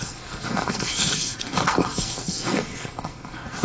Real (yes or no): no